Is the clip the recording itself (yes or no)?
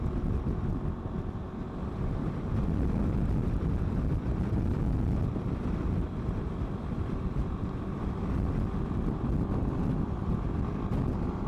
yes